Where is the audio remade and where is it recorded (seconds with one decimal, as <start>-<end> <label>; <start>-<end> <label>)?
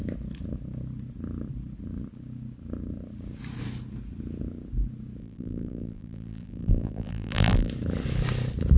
0.0-5.2 recorded; 5.2-7.7 remade; 7.7-8.8 recorded